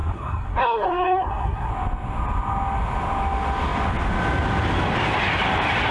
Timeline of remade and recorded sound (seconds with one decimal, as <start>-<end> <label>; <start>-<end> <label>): 0.0-1.7 remade; 1.7-5.9 recorded

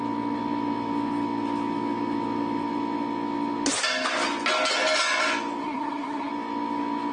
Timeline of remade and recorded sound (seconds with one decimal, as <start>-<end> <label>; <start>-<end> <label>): 0.0-5.6 recorded; 5.6-6.3 remade; 6.3-7.1 recorded

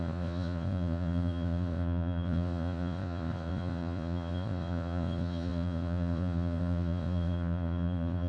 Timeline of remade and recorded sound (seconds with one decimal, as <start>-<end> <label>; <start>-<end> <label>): 0.0-8.3 remade

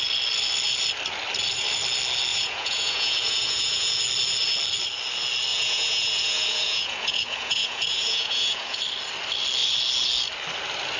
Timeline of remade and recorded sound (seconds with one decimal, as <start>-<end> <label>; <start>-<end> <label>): 0.0-2.3 recorded; 2.3-4.0 remade; 4.0-5.5 recorded; 5.5-8.8 remade; 8.8-11.0 recorded

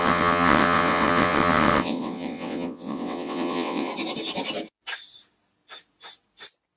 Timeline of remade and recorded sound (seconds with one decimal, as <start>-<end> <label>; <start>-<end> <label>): 0.0-3.9 remade; 3.9-6.8 recorded

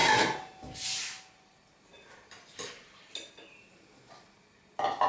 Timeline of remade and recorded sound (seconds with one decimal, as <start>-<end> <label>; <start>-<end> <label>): 0.0-5.1 recorded